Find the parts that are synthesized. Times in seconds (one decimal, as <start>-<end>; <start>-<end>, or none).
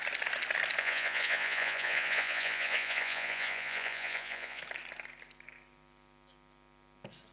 0.8-4.6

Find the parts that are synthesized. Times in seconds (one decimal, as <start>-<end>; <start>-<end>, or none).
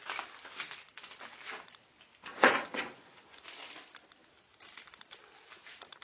2.3-3.4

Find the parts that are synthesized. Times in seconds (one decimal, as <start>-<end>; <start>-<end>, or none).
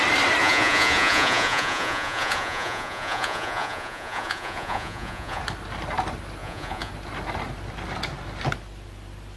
0.4-5.4; 6.4-6.9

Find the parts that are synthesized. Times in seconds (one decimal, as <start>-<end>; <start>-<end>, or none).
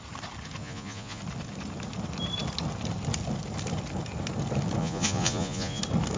0.6-1.2; 4.8-5.8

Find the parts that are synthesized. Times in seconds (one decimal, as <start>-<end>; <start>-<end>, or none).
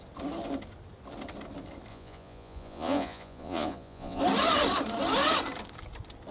1.9-4.2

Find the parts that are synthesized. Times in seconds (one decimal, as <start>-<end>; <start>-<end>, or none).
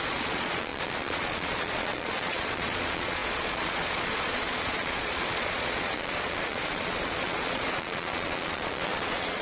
0.0-9.4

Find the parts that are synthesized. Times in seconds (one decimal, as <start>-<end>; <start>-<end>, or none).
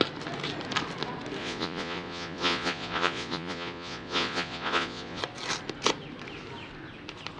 1.4-5.2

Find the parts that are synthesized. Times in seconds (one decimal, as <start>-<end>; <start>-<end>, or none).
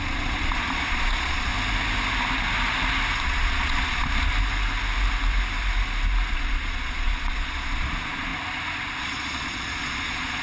0.0-1.5; 3.2-4.3; 6.3-8.3; 9.0-10.4